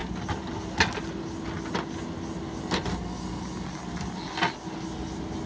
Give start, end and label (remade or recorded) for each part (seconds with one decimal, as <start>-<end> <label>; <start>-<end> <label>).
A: 0.0-5.5 recorded